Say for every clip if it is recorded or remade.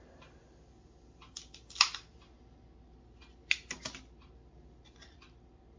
recorded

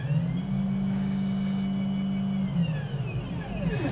recorded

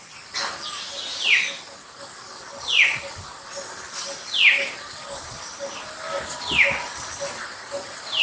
recorded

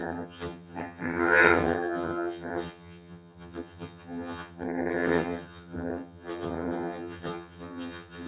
remade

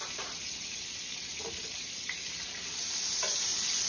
recorded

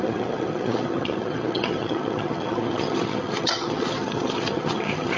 remade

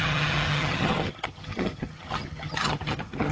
remade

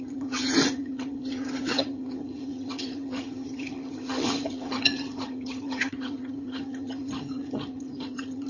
remade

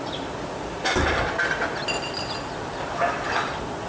recorded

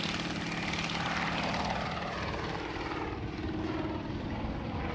recorded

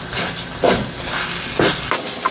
recorded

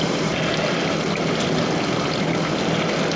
recorded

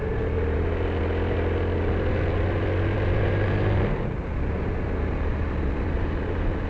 recorded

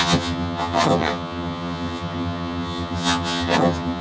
remade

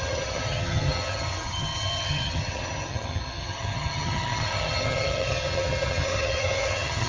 remade